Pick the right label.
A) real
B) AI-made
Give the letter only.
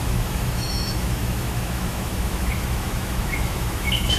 B